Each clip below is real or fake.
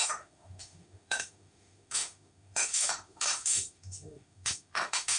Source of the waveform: fake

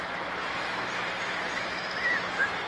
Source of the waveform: fake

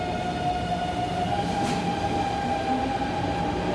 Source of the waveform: real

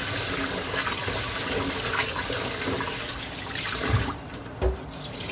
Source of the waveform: real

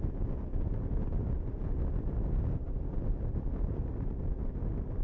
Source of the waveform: real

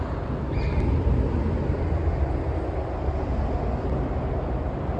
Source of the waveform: real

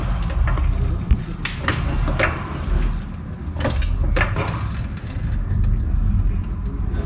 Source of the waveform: real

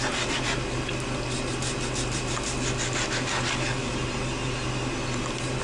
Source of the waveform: real